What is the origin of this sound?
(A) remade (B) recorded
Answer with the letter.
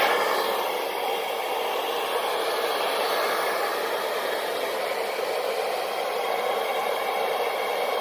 B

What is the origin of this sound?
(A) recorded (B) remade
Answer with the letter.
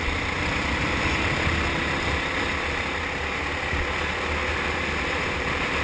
A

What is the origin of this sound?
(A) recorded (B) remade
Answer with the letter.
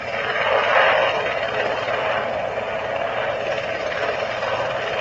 A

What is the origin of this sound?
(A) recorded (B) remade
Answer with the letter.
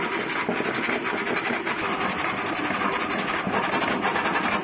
A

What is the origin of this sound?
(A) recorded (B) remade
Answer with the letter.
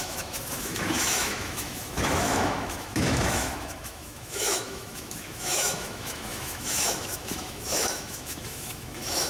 B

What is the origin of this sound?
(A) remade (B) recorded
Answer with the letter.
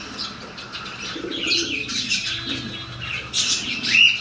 B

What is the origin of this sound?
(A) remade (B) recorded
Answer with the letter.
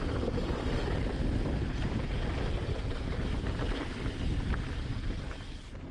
B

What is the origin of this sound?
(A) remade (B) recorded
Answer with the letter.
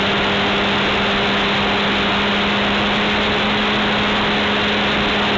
B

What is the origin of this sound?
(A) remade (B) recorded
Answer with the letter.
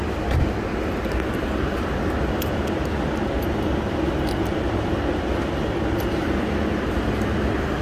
B